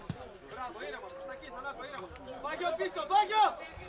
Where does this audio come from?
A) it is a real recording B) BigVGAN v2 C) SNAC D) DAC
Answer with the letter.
A